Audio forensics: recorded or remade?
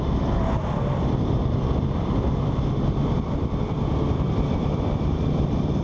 remade